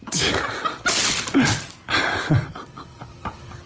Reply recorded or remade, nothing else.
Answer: recorded